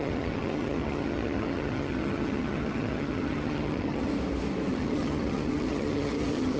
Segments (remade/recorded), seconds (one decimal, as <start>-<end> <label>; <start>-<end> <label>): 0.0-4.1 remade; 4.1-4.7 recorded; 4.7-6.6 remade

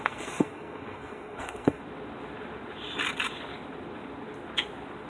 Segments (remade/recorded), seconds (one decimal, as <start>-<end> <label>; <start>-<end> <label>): 0.0-1.8 remade; 1.8-5.1 recorded

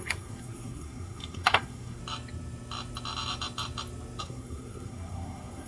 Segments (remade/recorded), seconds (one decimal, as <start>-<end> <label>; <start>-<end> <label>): 0.0-2.0 remade; 2.0-4.2 recorded; 4.2-5.7 remade

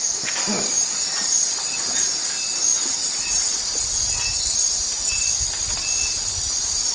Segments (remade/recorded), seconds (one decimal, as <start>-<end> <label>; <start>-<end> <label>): 0.0-6.9 recorded

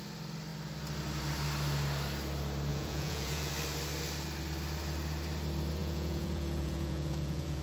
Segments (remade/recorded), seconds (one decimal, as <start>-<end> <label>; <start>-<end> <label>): 0.0-2.7 recorded; 2.7-3.5 remade; 3.5-5.8 recorded; 5.8-7.6 remade

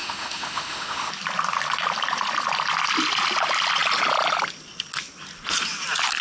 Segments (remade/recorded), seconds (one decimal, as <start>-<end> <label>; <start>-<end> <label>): 0.0-1.1 remade; 1.1-6.2 recorded

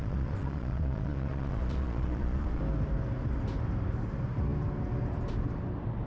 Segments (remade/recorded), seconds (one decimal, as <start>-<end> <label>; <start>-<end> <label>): 0.0-2.6 remade; 2.6-6.1 recorded

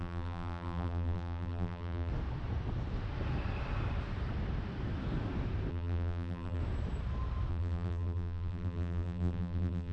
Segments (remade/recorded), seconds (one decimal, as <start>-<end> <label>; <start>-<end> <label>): 0.0-2.1 remade; 2.1-5.7 recorded; 5.7-6.6 remade; 6.6-7.5 recorded; 7.5-9.9 remade